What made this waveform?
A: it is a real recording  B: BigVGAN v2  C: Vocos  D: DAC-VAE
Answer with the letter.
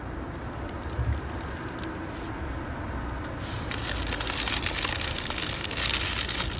A